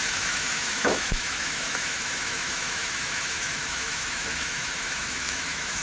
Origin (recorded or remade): remade